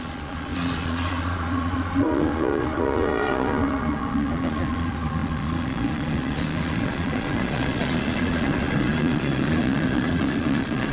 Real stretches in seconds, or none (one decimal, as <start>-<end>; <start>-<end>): none